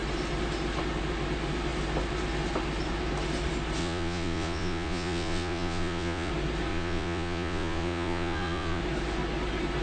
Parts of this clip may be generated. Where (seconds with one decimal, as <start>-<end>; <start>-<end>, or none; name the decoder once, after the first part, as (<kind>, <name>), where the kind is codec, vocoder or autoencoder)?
3.8-6.3 (vocoder, Vocos); 6.7-8.8